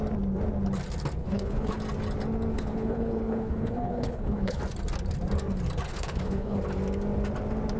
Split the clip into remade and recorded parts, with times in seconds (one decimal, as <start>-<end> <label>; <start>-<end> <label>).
0.0-1.2 recorded; 1.2-1.7 remade; 1.7-2.5 recorded; 2.5-4.6 remade; 4.6-5.9 recorded; 5.9-6.6 remade; 6.6-7.8 recorded